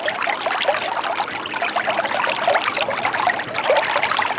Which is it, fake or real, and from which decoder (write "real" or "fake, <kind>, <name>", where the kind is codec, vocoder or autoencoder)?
real